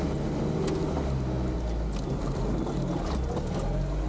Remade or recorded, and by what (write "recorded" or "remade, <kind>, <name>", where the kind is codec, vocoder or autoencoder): recorded